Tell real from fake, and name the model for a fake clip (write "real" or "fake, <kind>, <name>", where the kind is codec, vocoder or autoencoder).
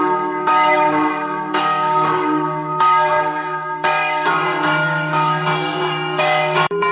fake, codec, DAC